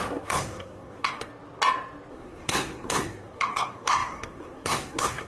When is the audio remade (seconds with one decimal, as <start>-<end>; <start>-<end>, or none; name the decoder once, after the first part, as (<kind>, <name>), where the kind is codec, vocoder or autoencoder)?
0.0-1.3 (codec, SNAC); 2.1-5.3